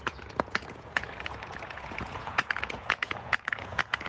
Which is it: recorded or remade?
remade